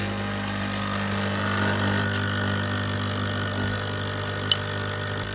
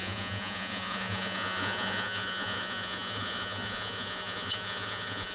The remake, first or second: second